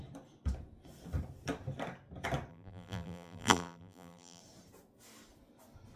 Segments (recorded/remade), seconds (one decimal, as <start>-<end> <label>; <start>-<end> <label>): 0.0-2.5 recorded; 2.5-4.4 remade; 4.4-6.0 recorded